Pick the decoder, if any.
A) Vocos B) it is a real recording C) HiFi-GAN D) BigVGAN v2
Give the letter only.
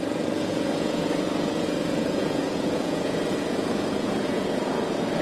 A